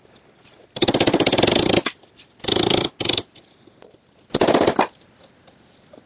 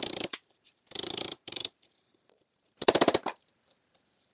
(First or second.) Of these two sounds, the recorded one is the first